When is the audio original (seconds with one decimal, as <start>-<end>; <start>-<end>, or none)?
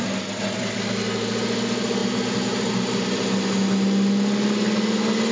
0.0-5.3